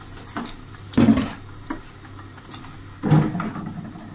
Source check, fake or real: real